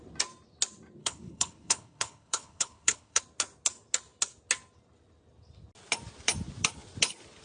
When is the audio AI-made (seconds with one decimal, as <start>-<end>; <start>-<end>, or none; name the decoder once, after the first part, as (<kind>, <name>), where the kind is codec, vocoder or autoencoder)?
1.0-3.2 (codec, HILCodec)